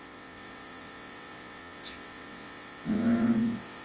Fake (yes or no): yes